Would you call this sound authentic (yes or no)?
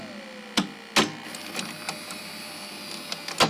yes